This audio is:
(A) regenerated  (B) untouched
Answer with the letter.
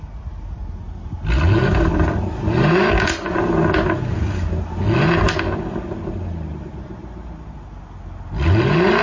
B